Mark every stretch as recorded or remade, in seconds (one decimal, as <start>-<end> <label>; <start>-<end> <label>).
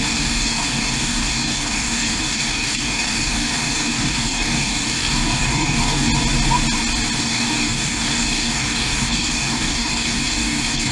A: 0.0-6.1 remade; 6.1-7.2 recorded; 7.2-10.9 remade